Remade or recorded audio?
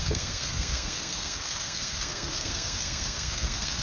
remade